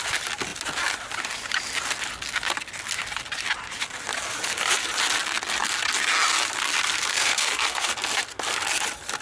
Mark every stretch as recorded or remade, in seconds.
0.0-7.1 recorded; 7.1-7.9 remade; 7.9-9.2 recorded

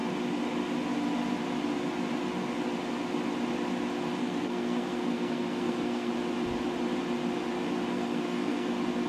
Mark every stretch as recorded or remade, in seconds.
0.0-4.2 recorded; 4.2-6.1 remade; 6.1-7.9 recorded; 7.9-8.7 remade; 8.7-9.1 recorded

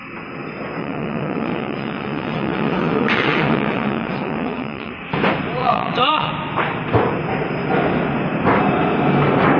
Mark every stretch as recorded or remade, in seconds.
0.0-0.8 recorded; 0.8-4.9 remade; 4.9-5.6 recorded; 5.6-6.3 remade; 6.3-9.6 recorded